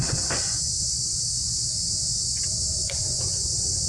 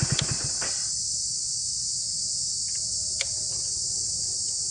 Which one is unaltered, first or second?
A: second